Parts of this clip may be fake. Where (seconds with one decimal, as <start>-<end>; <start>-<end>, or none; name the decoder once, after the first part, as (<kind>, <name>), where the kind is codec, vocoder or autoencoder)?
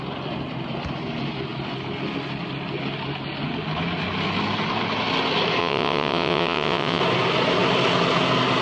5.6-7.0 (vocoder, WaveNeXt)